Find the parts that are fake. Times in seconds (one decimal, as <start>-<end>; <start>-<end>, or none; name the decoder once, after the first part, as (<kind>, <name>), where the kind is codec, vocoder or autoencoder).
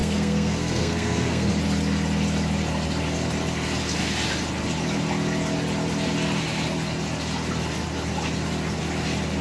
0.0-1.5 (codec, SNAC)